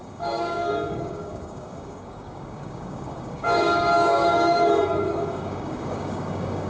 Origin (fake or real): fake